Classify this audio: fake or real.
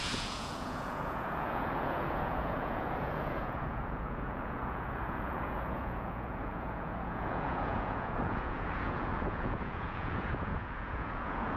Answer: fake